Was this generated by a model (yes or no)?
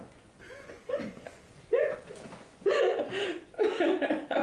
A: yes